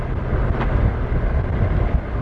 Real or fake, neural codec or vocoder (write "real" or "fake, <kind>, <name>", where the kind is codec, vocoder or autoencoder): real